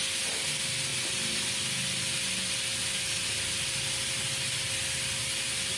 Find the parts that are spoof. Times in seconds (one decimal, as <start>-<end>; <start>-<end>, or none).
none